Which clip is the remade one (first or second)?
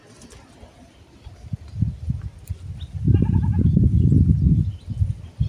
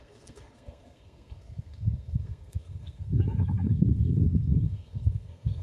second